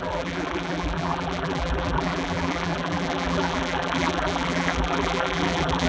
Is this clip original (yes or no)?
no